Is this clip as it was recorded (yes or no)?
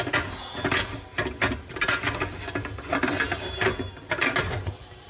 yes